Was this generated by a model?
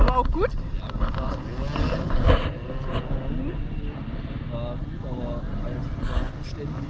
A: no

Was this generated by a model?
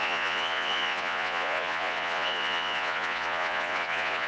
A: yes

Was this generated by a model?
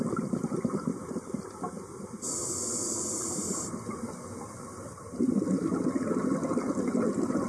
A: no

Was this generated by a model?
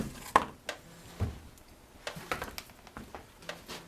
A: no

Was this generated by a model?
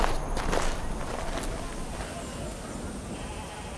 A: no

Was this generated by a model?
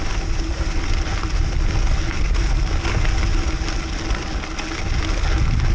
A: no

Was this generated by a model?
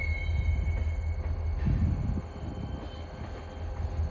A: no